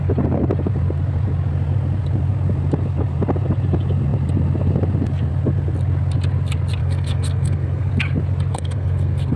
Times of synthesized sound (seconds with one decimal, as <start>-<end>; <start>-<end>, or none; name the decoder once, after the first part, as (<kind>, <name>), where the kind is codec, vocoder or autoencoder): 6.8-7.9 (codec, SNAC); 8.5-9.4